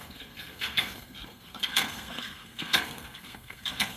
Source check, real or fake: fake